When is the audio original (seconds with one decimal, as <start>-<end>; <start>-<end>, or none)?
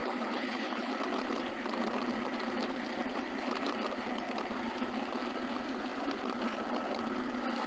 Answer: 0.9-7.7